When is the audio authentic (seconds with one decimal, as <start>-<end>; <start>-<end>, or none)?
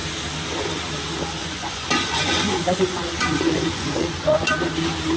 0.0-1.4; 4.5-5.2